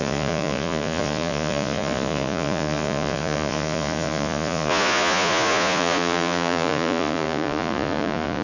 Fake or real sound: fake